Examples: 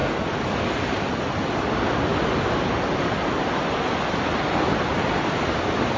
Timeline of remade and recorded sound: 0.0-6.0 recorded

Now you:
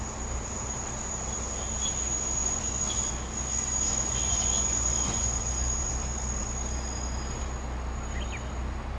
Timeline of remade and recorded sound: 0.0-2.4 recorded; 2.4-3.1 remade; 3.1-3.9 recorded; 3.9-5.4 remade; 5.4-9.0 recorded

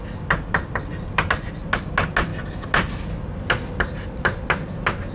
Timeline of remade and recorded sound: 0.0-5.1 recorded

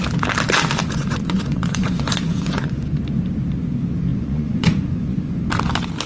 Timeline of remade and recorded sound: 0.0-0.8 recorded; 0.8-3.0 remade; 3.0-4.1 recorded; 4.1-5.4 remade; 5.4-6.1 recorded

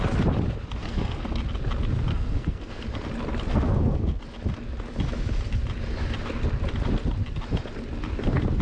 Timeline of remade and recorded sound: 0.0-0.8 recorded; 0.8-1.4 remade; 1.4-2.1 recorded; 2.1-2.8 remade; 2.8-3.5 recorded; 3.5-4.2 remade; 4.2-8.6 recorded

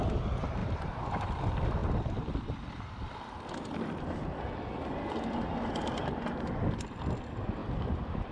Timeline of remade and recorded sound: 0.0-0.6 recorded; 0.6-1.4 remade; 1.4-7.6 recorded; 7.6-8.3 remade

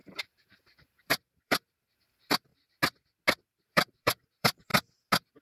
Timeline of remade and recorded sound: 0.0-2.5 remade; 2.5-3.4 recorded; 3.4-4.7 remade; 4.7-5.4 recorded